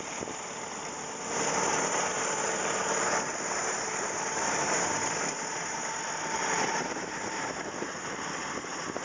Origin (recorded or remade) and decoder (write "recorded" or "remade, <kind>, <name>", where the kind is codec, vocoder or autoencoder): remade, vocoder, BigVGAN v2